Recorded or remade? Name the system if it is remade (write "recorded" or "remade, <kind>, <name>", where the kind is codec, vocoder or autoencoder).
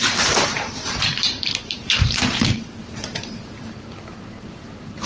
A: remade, vocoder, BigVGAN v2